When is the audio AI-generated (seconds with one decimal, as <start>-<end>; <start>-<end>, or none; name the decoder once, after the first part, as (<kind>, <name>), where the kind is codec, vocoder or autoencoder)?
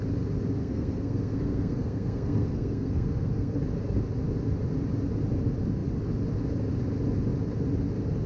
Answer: 0.6-3.6 (codec, SNAC)